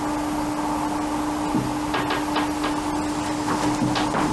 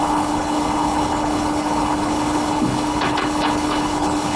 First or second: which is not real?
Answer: second